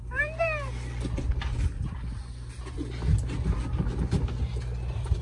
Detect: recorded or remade recorded